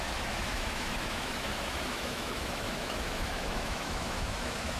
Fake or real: fake